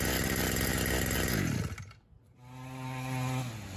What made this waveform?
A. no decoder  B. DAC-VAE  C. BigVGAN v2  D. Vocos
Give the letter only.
A